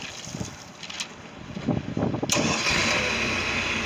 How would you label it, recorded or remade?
recorded